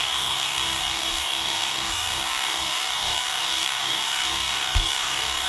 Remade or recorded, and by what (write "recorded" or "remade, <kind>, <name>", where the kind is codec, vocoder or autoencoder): remade, codec, DAC